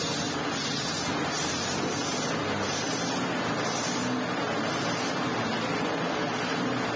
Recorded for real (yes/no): yes